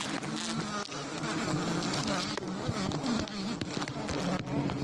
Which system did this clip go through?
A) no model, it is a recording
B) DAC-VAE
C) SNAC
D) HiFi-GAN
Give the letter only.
A